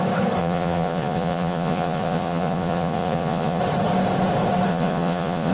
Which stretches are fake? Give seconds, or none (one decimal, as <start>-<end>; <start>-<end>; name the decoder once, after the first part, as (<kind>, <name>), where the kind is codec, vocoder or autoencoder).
0.4-3.6 (vocoder, Vocos); 4.7-5.5